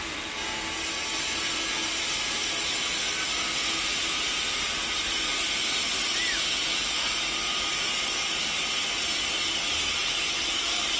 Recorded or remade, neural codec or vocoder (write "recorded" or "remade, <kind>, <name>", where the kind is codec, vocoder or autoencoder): recorded